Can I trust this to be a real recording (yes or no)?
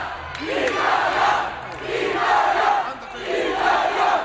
yes